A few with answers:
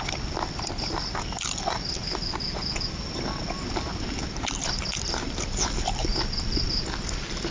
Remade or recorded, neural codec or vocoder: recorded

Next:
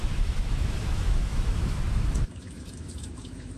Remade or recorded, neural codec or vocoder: remade, autoencoder, DAC-VAE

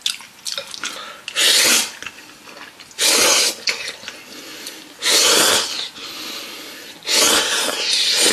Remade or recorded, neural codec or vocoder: recorded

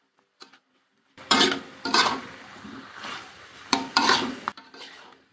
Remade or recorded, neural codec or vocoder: remade, vocoder, BigVGAN v2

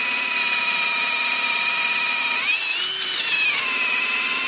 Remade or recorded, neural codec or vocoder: recorded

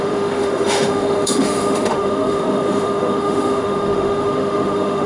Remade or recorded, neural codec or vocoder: remade, autoencoder, DAC-VAE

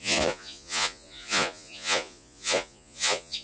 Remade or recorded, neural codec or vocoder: remade, vocoder, Vocos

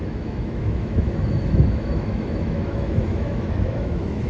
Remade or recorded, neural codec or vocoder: remade, autoencoder, DAC-VAE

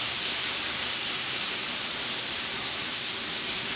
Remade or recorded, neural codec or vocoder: recorded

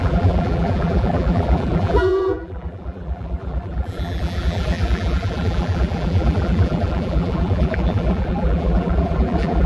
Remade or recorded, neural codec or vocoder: remade, vocoder, BigVGAN v2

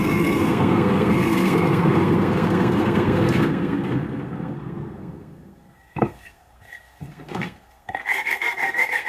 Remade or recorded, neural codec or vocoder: remade, codec, SNAC